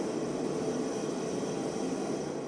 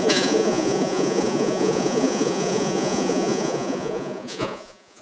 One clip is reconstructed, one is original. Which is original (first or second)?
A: first